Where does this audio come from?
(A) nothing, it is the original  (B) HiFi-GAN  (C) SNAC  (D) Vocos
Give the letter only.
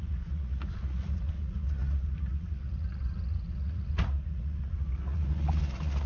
D